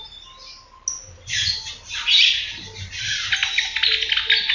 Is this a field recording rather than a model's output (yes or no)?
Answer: yes